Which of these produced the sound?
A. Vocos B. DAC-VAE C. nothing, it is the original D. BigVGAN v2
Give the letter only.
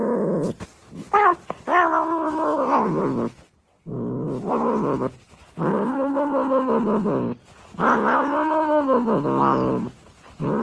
C